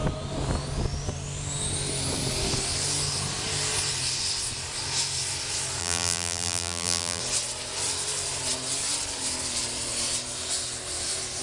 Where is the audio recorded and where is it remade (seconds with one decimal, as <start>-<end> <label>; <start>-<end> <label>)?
0.0-5.8 recorded; 5.8-7.2 remade; 7.2-11.4 recorded